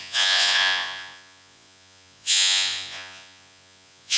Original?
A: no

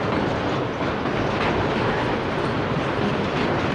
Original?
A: yes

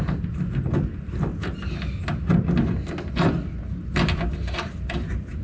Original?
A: yes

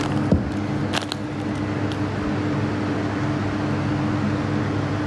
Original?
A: yes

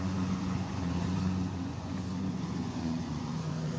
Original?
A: no